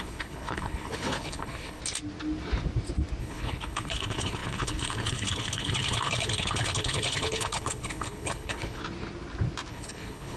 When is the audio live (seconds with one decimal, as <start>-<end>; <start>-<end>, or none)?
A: 1.8-3.2; 8.8-9.7